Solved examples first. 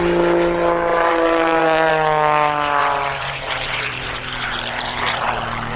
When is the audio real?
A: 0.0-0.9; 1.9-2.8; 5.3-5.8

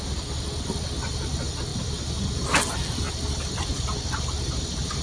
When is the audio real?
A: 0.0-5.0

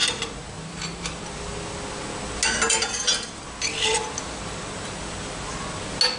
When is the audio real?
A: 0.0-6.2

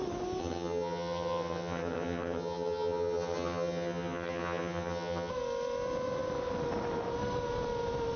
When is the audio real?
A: 0.0-0.4; 5.3-8.2

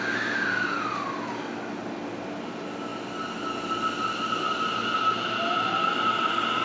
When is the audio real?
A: 0.0-6.6

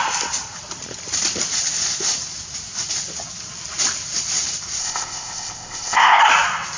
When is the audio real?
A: 0.0-4.8; 6.2-6.8

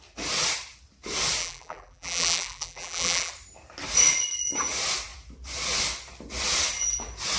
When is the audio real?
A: 0.0-1.4; 3.3-7.4

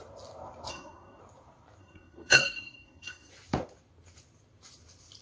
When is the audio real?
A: 0.0-0.7; 1.2-1.8; 3.3-5.2